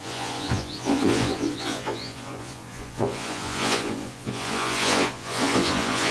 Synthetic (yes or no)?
yes